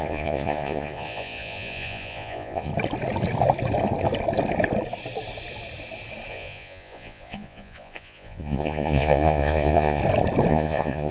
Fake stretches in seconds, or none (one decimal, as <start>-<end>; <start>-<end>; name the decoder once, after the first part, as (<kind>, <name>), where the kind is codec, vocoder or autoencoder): 0.0-2.7 (vocoder, Vocos); 6.3-10.0; 10.5-11.1